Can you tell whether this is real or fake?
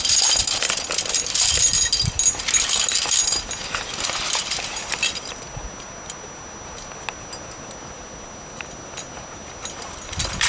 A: real